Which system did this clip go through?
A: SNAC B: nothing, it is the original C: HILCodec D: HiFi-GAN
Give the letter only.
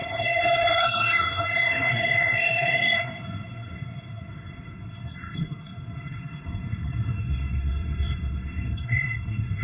A